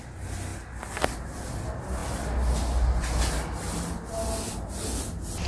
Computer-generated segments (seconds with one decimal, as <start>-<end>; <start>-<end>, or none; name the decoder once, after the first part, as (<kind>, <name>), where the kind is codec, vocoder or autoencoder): none